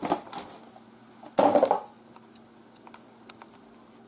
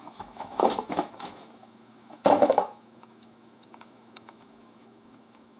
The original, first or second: first